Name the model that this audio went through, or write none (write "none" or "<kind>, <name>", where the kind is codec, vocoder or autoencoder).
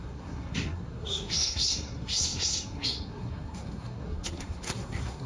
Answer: codec, SNAC